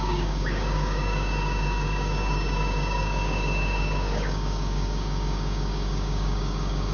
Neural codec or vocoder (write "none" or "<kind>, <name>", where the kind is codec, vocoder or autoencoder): codec, DAC